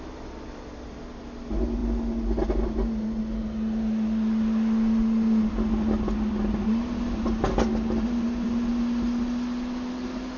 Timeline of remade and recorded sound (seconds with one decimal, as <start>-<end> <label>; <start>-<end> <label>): 0.0-10.4 recorded